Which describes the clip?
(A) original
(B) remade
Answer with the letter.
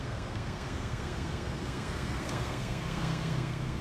B